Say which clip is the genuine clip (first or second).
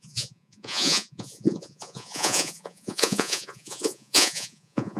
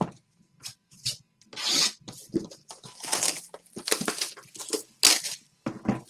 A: second